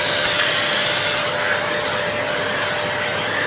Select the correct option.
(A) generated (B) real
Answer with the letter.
B